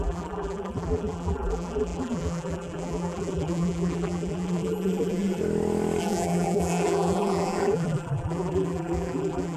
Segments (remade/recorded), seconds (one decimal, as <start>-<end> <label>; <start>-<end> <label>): 0.0-5.4 remade; 5.4-6.0 recorded; 6.0-9.6 remade